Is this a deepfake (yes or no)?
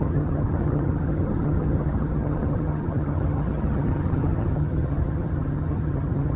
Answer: yes